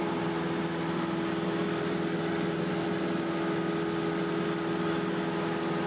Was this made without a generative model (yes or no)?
yes